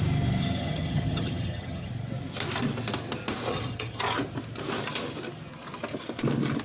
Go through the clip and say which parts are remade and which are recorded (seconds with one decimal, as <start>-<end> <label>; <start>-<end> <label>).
0.0-0.4 recorded; 0.4-1.9 remade; 1.9-3.5 recorded; 3.5-4.0 remade; 4.0-6.6 recorded